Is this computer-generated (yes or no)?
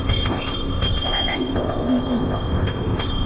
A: yes